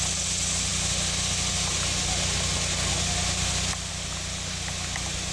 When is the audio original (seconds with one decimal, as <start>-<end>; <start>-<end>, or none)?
0.0-5.3